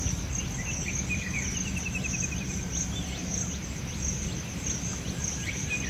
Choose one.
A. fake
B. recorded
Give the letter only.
B